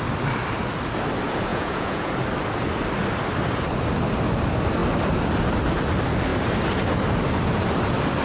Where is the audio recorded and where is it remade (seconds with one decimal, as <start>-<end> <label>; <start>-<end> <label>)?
0.0-1.5 recorded; 1.5-2.1 remade; 2.1-8.2 recorded